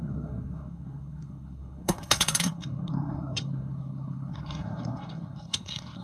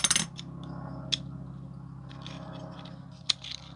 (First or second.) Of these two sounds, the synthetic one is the first